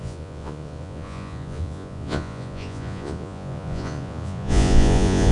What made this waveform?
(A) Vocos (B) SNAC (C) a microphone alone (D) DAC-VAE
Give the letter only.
A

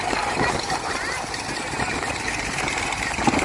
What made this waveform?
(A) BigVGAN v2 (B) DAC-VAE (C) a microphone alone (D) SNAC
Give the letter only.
C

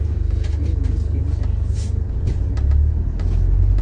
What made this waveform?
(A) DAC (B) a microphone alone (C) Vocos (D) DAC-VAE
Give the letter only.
B